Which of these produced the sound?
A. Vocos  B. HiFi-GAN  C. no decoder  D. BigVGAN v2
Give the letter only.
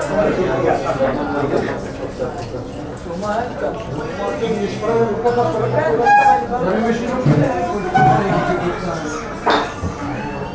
C